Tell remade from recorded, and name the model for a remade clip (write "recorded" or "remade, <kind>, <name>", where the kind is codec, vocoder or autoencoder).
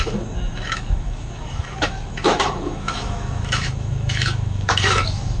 remade, autoencoder, DAC-VAE